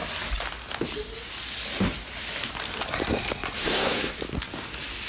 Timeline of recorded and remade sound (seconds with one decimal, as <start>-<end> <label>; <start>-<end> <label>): 0.0-3.6 recorded; 3.6-4.2 remade; 4.2-5.1 recorded